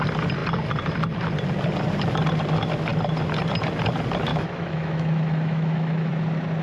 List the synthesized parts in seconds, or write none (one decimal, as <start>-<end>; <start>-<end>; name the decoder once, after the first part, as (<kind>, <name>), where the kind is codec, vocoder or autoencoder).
4.3-6.1 (autoencoder, DAC-VAE)